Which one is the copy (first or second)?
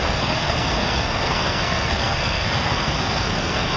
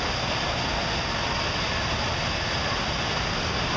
first